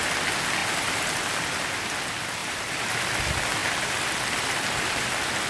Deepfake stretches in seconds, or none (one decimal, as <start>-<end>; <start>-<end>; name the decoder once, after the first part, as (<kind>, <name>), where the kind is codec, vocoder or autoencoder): 0.6-1.3 (vocoder, BigVGAN v2); 2.4-3.0